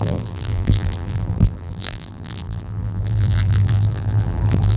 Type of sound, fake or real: fake